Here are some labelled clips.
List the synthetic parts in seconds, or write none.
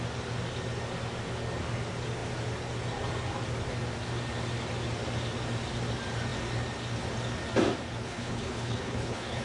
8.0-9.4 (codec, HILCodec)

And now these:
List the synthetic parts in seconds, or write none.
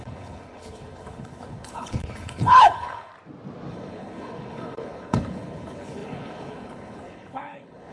0.0-3.1 (codec, HILCodec); 3.7-7.9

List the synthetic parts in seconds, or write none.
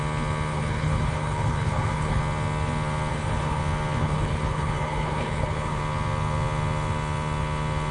0.5-2.2 (codec, HILCodec); 3.1-3.6; 4.0-5.8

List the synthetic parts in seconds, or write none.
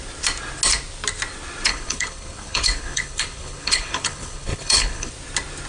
1.7-5.1 (codec, HILCodec)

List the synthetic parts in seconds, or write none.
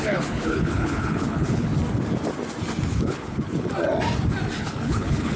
0.0-1.7 (codec, HILCodec); 2.9-3.7; 4.6-5.4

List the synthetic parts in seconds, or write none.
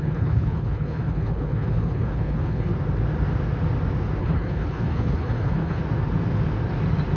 0.0-2.7 (codec, HILCodec); 4.2-5.8